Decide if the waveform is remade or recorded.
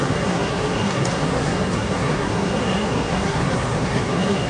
remade